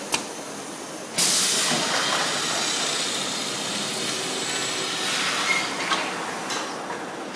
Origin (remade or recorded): recorded